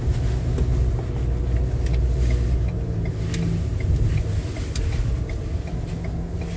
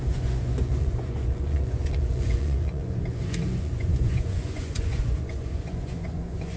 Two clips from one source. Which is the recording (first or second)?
first